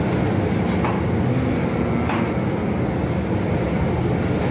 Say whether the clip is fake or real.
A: real